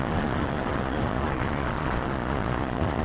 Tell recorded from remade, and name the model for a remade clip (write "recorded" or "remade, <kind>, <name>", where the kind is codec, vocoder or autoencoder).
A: remade, vocoder, Vocos